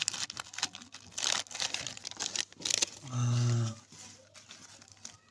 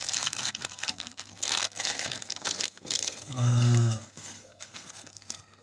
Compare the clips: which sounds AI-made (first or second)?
second